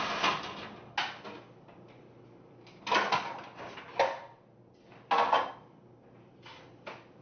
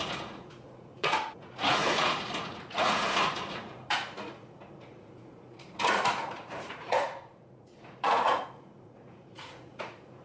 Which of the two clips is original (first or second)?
first